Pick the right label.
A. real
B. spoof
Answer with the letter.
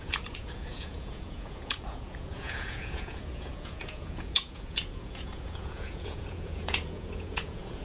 B